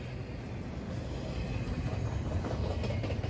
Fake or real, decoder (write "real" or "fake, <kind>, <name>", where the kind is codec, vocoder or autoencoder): real